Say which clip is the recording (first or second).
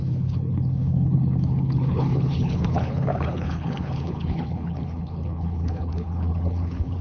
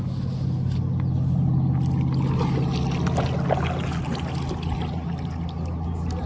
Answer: second